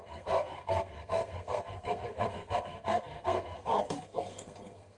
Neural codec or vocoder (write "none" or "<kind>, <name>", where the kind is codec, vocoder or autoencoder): codec, SNAC